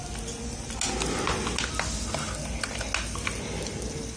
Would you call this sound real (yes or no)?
yes